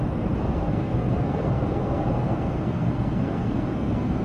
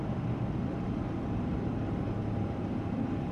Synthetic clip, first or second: first